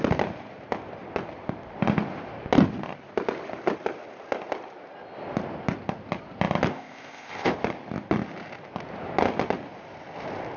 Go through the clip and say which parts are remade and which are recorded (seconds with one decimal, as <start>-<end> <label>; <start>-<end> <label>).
0.0-6.7 recorded; 6.7-7.5 remade; 7.5-10.6 recorded